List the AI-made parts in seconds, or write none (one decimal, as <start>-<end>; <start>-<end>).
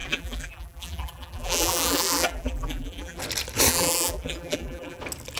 0.0-3.2; 3.7-5.0